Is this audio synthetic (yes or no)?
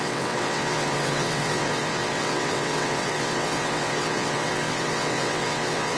yes